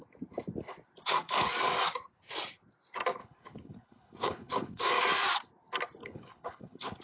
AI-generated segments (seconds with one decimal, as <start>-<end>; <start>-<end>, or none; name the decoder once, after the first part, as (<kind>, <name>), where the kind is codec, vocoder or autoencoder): 3.2-4.9 (codec, HILCodec); 6.0-7.0